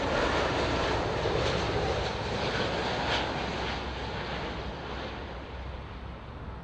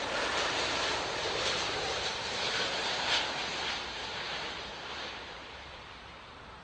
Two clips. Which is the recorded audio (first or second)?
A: first